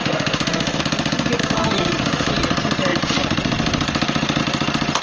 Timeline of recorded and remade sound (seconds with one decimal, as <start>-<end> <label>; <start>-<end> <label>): 0.0-0.8 remade; 0.8-1.4 recorded; 1.4-2.3 remade; 2.3-5.0 recorded